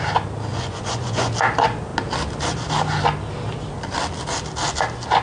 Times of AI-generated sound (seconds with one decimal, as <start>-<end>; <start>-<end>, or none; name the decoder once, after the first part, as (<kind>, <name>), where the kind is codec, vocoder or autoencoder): 0.5-1.3 (vocoder, Vocos)